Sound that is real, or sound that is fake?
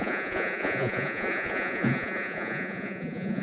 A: fake